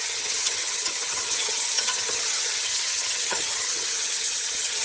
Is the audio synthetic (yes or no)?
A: yes